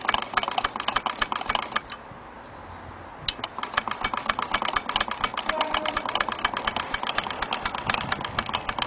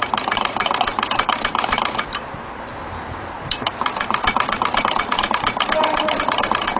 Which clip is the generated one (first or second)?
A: second